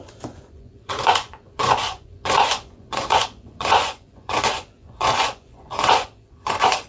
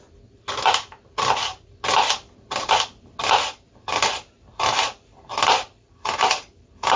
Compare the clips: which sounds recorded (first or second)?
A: second